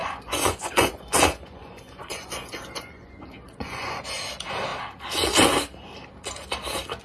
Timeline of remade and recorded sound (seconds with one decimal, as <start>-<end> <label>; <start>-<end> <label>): 0.0-4.0 remade; 4.0-7.0 recorded